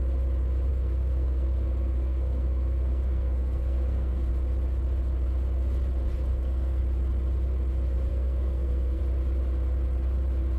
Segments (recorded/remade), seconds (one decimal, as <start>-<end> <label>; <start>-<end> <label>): 0.0-0.7 recorded; 0.7-4.3 remade; 4.3-6.3 recorded; 6.3-6.8 remade; 6.8-8.1 recorded; 8.1-9.0 remade; 9.0-10.6 recorded